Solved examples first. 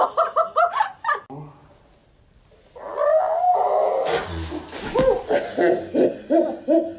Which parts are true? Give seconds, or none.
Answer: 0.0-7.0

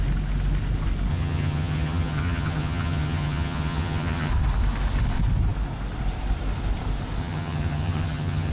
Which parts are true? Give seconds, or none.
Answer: 0.0-1.1; 4.3-7.2